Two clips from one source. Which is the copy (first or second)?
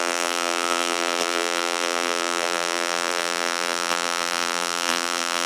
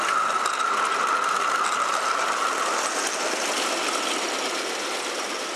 first